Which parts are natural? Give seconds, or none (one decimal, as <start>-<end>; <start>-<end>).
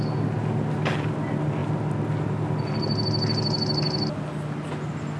0.0-5.2